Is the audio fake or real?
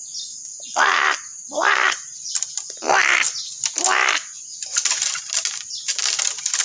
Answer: real